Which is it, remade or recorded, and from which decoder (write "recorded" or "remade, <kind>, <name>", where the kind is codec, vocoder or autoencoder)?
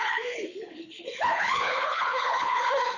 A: remade, codec, HILCodec